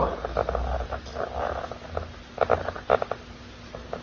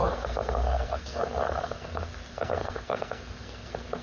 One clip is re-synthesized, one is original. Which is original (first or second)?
first